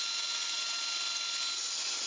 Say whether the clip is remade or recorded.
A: recorded